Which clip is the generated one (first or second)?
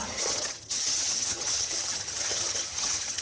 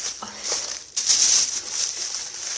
first